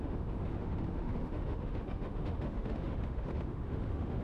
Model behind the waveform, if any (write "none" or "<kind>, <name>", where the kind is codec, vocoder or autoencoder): autoencoder, DAC-VAE